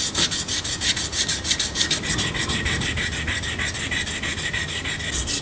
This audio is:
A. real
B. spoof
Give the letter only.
A